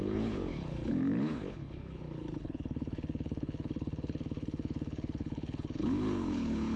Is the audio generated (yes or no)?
yes